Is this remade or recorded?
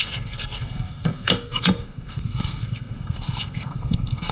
remade